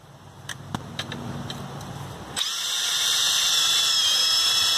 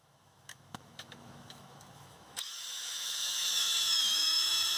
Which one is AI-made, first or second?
second